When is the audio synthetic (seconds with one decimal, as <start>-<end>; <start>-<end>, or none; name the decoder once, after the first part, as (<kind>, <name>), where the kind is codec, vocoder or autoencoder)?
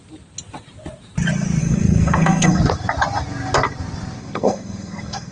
1.6-2.6 (codec, SNAC); 4.2-5.3